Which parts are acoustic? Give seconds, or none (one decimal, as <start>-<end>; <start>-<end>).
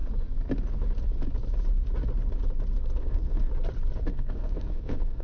0.0-3.1; 3.5-4.1